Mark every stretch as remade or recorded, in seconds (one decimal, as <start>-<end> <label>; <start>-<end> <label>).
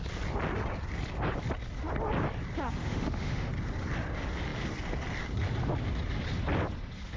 0.0-2.8 recorded; 2.8-3.5 remade; 3.5-7.2 recorded